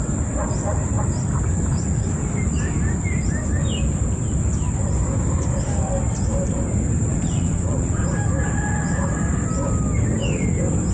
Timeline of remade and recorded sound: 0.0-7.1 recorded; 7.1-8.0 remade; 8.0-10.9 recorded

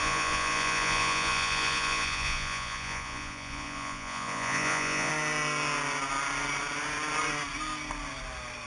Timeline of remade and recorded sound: 0.0-5.1 remade; 5.1-8.7 recorded

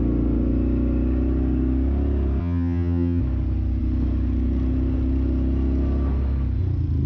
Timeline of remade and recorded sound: 0.0-2.4 recorded; 2.4-3.2 remade; 3.2-7.1 recorded

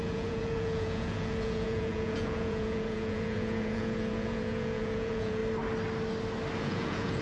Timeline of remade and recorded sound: 0.0-5.4 remade; 5.4-6.6 recorded; 6.6-7.2 remade